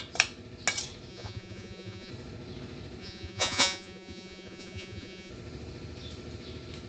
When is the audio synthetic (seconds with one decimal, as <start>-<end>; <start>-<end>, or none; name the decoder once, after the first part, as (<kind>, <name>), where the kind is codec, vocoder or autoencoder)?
1.1-2.1 (vocoder, Vocos); 3.0-5.3